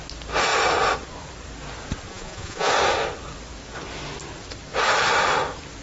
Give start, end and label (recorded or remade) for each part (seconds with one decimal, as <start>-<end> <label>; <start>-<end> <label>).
0.0-2.1 recorded; 2.1-2.7 remade; 2.7-5.8 recorded